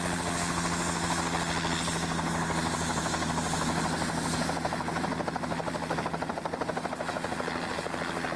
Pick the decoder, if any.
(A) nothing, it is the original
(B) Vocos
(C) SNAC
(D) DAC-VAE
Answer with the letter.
A